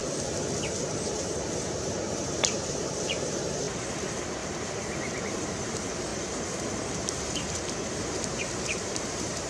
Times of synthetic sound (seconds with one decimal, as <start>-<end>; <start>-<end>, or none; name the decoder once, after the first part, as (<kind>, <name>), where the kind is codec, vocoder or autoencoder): 0.8-4.4 (vocoder, BigVGAN v2); 5.2-6.1; 6.8-9.5